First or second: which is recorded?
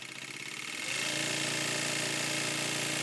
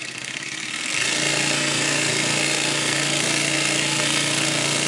first